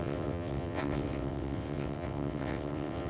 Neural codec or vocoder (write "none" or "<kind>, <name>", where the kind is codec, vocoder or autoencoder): vocoder, WaveNeXt